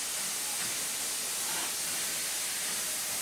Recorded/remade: recorded